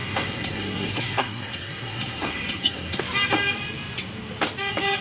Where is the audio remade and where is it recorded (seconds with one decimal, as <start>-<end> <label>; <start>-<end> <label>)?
0.0-3.0 remade; 3.0-5.0 recorded